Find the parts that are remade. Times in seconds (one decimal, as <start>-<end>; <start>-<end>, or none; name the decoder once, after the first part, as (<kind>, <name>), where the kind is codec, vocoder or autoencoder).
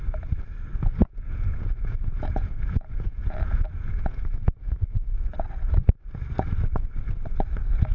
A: 1.0-5.2 (vocoder, Vocos)